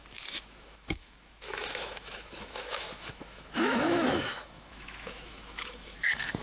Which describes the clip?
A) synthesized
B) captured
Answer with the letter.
A